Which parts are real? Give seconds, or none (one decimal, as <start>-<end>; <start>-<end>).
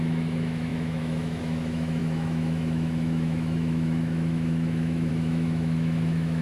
none